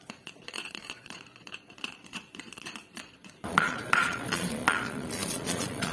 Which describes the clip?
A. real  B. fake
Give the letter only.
B